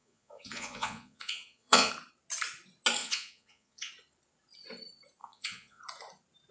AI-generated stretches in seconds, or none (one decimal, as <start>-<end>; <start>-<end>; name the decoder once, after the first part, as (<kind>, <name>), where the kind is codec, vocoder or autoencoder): 0.0-1.9 (vocoder, Vocos); 3.0-3.9; 5.2-5.8